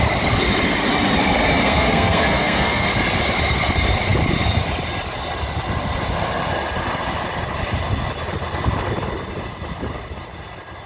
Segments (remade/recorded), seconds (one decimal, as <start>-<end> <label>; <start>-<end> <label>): 0.0-1.6 recorded; 1.6-2.9 remade; 2.9-10.9 recorded